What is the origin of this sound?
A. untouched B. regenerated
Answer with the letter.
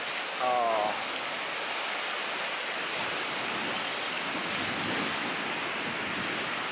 A